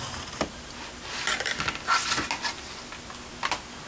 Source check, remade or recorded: recorded